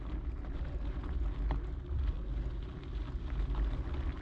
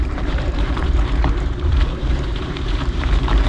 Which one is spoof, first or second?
second